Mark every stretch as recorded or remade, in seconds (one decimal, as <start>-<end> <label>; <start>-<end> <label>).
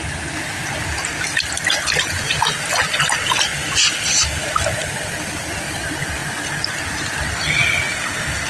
0.0-8.5 recorded